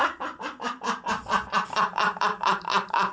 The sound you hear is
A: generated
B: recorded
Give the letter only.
A